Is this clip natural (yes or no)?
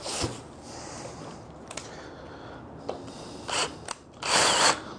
yes